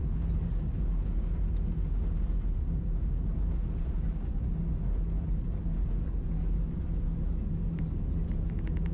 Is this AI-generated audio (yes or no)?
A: no